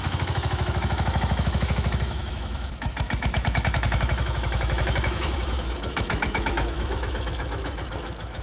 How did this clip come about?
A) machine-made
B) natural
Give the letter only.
A